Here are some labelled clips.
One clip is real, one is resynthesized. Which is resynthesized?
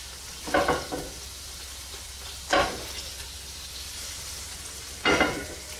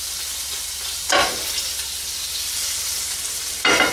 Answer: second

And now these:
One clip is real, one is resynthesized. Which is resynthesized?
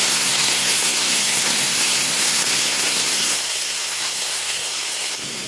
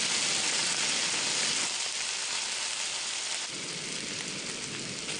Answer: first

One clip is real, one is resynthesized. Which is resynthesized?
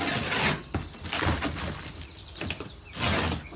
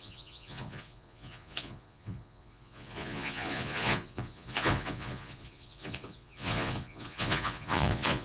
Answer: second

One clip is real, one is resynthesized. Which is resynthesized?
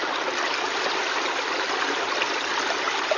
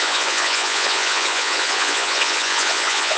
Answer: second